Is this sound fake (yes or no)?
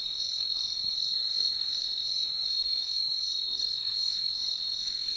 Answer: yes